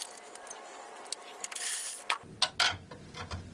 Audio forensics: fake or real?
real